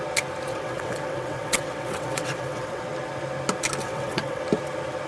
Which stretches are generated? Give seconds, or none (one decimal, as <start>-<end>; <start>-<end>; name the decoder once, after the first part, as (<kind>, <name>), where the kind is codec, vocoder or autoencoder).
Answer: 0.5-2.8 (vocoder, WaveNeXt); 3.8-4.4